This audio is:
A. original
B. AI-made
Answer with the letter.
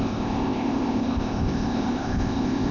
B